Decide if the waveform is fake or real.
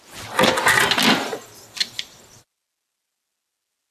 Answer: real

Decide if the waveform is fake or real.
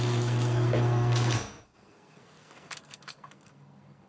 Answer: fake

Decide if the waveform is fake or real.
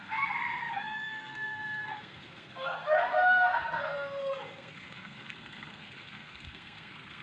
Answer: fake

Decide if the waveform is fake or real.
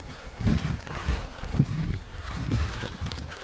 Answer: fake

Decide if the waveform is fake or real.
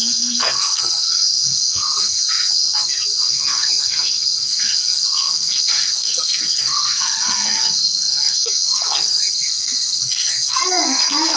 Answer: fake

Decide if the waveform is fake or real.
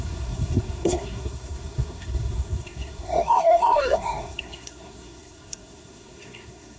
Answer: fake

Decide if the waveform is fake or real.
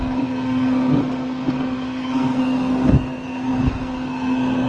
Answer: fake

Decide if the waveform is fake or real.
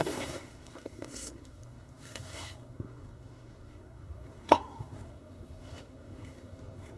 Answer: fake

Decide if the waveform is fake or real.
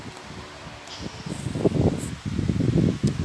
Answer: real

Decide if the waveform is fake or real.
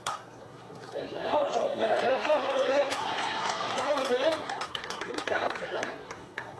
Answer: fake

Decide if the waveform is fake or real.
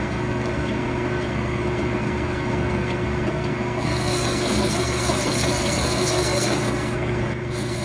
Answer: fake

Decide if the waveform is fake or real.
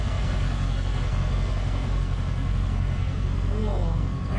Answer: fake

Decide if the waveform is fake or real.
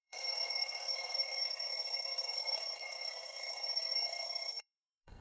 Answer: fake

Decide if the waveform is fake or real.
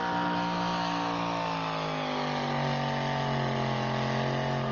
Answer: real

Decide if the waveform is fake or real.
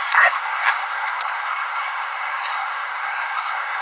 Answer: fake